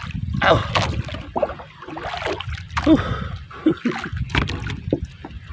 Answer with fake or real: real